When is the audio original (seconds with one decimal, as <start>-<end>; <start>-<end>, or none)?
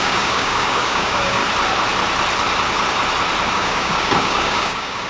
1.4-3.5